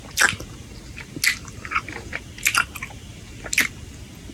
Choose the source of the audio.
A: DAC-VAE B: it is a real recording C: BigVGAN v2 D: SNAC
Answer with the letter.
B